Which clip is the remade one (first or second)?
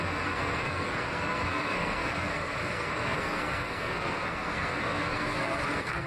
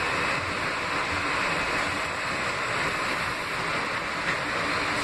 first